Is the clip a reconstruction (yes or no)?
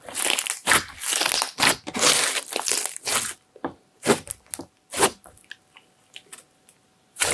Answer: no